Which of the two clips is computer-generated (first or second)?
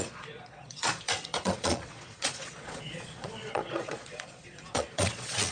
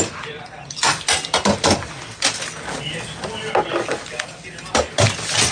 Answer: first